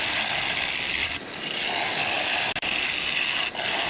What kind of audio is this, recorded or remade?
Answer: recorded